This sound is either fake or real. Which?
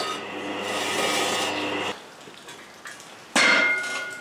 real